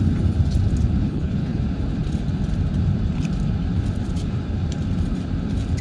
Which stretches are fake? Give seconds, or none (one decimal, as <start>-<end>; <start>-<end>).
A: 1.0-1.6